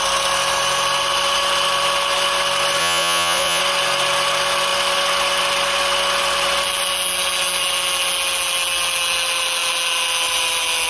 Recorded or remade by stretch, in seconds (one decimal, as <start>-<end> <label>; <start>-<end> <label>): 0.0-2.8 recorded; 2.8-3.6 remade; 3.6-10.9 recorded

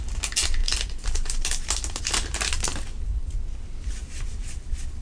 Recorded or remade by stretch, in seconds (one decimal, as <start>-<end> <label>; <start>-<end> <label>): 0.0-5.0 recorded

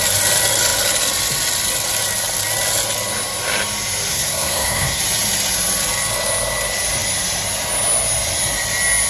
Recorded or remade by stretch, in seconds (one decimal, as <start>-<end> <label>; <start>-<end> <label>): 0.0-4.1 recorded; 4.1-5.0 remade; 5.0-9.1 recorded

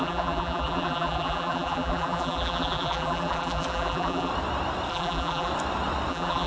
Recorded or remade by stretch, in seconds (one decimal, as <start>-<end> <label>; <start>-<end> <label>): 0.0-4.3 remade; 4.3-4.9 recorded; 4.9-5.5 remade; 5.5-6.1 recorded; 6.1-6.5 remade